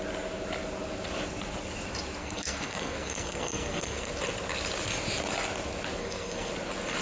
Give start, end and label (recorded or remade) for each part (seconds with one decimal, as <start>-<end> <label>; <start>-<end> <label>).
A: 0.0-2.2 recorded; 2.2-4.1 remade; 4.1-6.0 recorded; 6.0-6.5 remade; 6.5-7.0 recorded

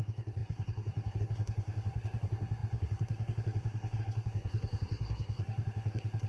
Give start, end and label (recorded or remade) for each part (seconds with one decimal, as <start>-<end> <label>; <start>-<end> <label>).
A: 0.0-6.3 remade

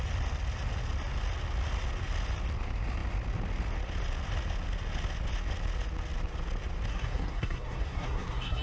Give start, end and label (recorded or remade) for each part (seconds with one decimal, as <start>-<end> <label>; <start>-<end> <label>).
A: 0.0-6.9 recorded; 6.9-8.6 remade

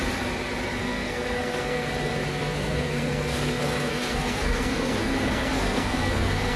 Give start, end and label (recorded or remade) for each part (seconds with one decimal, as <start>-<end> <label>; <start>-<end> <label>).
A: 0.0-0.8 recorded; 0.8-1.9 remade; 1.9-2.3 recorded; 2.3-6.6 remade

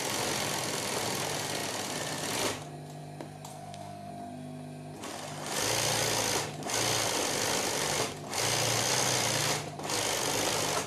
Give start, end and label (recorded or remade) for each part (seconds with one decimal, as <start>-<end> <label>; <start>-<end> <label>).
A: 0.0-3.5 recorded; 3.5-4.1 remade; 4.1-10.9 recorded